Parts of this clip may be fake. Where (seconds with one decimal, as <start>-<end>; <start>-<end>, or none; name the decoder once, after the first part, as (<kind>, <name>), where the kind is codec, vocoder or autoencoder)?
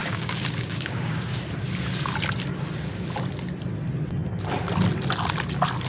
0.0-1.4 (codec, DAC)